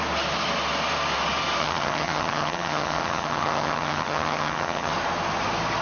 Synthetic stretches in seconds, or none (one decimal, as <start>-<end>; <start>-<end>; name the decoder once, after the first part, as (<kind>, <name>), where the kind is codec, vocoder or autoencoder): 1.6-4.9 (vocoder, HiFi-GAN)